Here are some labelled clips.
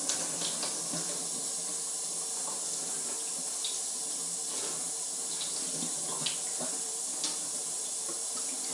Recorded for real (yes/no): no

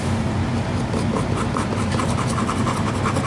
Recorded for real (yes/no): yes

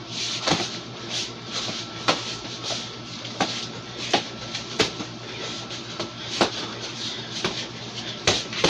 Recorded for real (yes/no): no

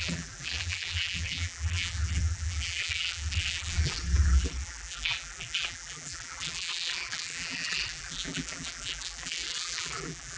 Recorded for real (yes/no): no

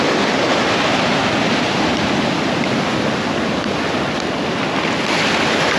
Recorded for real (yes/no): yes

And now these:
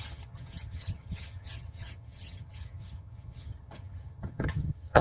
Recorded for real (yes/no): no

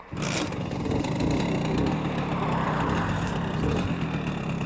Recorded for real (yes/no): yes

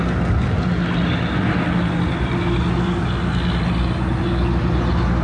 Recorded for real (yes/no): yes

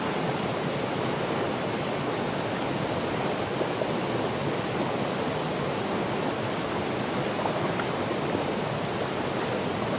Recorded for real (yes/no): yes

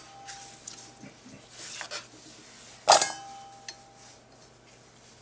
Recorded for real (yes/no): yes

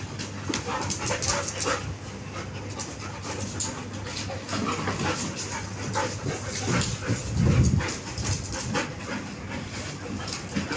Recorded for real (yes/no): yes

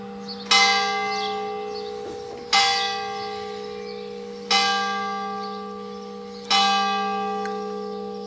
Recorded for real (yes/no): yes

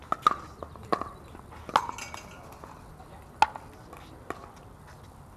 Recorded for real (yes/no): yes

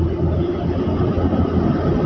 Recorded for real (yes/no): yes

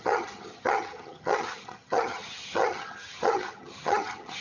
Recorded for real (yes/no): no